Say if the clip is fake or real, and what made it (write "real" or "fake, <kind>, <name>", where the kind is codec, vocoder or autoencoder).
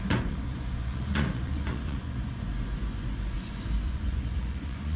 fake, vocoder, Vocos